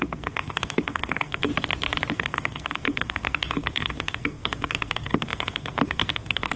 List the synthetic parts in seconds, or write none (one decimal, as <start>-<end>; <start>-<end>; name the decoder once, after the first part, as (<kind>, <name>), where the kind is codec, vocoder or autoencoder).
0.0-1.5 (codec, SNAC); 2.1-6.6